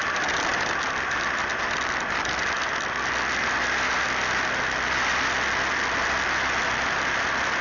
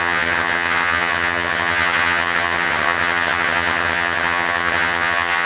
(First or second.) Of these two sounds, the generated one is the second